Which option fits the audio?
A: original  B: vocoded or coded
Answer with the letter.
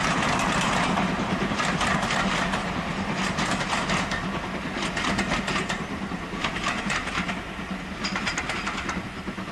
A